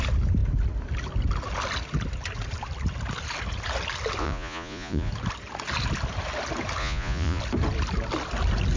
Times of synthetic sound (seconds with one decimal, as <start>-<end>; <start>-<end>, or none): 4.2-5.1; 6.8-7.4